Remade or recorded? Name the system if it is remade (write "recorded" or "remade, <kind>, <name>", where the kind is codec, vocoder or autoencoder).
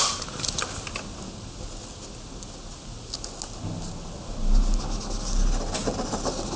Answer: recorded